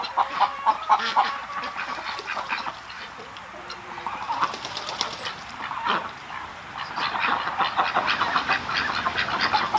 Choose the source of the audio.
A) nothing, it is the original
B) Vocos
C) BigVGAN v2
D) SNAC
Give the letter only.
C